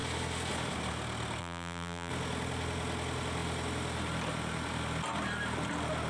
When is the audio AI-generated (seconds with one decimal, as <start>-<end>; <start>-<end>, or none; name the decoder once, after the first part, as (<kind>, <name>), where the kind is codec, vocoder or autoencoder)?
1.4-2.1 (vocoder, BigVGAN v2)